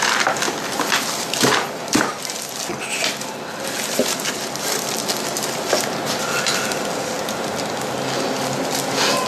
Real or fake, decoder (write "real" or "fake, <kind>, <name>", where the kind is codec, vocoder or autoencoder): real